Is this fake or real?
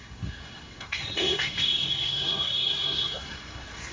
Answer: fake